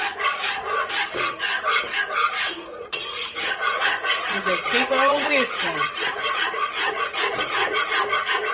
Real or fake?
fake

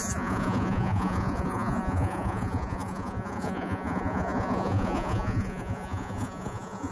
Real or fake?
fake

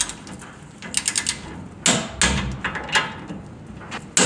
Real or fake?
real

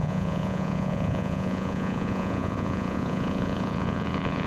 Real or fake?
fake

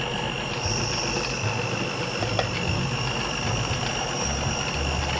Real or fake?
real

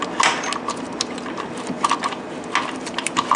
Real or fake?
real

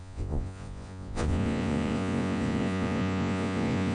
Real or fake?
fake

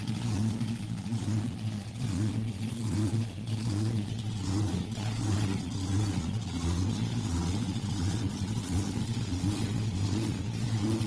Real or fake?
fake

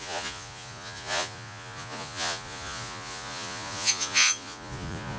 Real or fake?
fake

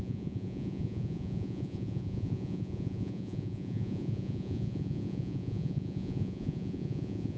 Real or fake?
fake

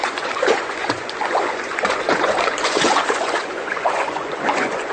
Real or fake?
fake